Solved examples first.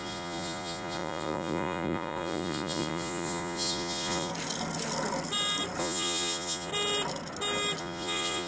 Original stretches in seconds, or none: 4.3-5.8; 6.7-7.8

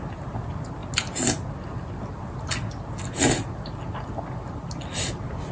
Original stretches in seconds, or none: 0.0-5.5